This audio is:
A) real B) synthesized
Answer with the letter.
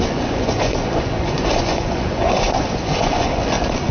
B